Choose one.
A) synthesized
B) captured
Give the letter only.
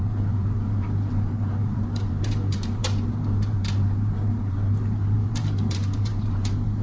A